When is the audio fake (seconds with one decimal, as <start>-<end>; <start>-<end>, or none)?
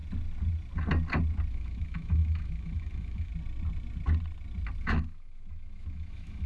1.5-3.3; 4.8-6.5